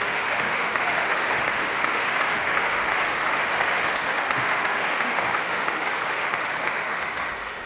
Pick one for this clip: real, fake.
fake